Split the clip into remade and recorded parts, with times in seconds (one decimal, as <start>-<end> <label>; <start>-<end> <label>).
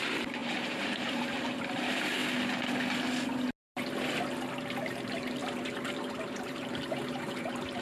0.0-2.2 remade; 2.2-4.8 recorded; 4.8-7.8 remade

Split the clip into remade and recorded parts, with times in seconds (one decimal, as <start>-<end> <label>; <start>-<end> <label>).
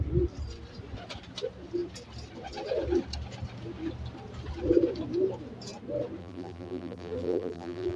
0.0-6.2 recorded; 6.2-8.0 remade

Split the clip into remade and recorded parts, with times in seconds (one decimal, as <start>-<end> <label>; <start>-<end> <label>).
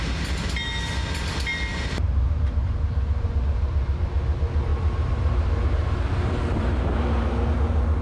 0.0-1.7 recorded; 1.7-3.3 remade; 3.3-4.7 recorded; 4.7-7.4 remade; 7.4-8.0 recorded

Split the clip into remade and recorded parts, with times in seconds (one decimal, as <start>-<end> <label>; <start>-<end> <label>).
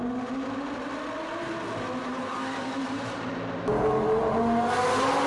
0.0-2.0 recorded; 2.0-3.3 remade; 3.3-5.3 recorded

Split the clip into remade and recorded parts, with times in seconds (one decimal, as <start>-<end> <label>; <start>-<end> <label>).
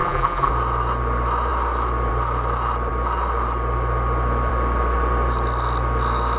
0.0-0.5 remade; 0.5-6.4 recorded